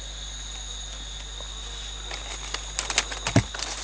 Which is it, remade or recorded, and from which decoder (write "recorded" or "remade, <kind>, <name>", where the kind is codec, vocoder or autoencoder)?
recorded